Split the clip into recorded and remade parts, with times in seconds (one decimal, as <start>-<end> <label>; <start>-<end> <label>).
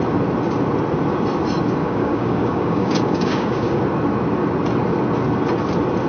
0.0-1.8 recorded; 1.8-3.8 remade; 3.8-6.1 recorded